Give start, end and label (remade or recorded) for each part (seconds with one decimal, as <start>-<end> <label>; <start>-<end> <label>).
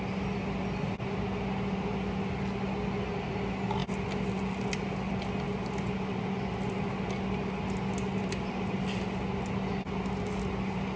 0.0-11.0 recorded